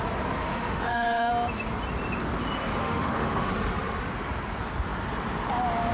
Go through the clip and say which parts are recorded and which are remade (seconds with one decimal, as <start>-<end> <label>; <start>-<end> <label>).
0.0-0.4 recorded; 0.4-1.3 remade; 1.3-2.8 recorded; 2.8-3.5 remade; 3.5-5.9 recorded

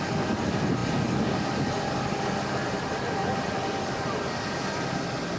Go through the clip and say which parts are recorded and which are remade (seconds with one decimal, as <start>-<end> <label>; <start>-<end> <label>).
0.0-5.4 recorded

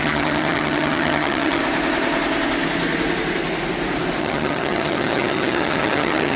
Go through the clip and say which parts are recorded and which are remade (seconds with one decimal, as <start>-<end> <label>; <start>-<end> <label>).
0.0-1.6 remade; 1.6-4.2 recorded; 4.2-6.4 remade

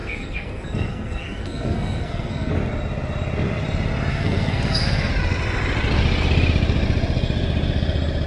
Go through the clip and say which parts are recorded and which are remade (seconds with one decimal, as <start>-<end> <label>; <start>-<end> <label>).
0.0-2.5 remade; 2.5-4.1 recorded; 4.1-5.1 remade; 5.1-8.3 recorded

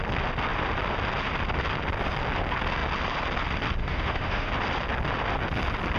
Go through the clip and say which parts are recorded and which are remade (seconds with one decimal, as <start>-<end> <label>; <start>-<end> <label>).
0.0-3.8 recorded; 3.8-4.5 remade; 4.5-6.0 recorded

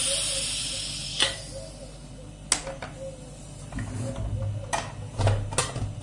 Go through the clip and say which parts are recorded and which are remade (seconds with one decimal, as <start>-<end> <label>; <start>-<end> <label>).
0.0-6.0 recorded

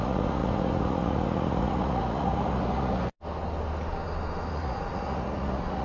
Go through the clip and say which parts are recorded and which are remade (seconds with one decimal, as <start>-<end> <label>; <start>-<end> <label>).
0.0-3.1 remade; 3.1-4.5 recorded; 4.5-5.8 remade